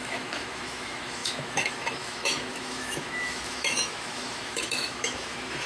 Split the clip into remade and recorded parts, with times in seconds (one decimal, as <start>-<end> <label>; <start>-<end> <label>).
0.0-5.7 remade